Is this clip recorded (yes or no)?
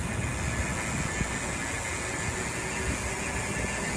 yes